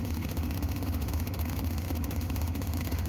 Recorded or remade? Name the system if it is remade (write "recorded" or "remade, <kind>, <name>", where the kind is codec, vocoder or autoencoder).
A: remade, autoencoder, DAC-VAE